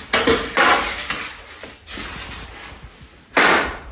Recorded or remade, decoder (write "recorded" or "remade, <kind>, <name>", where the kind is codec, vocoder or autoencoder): recorded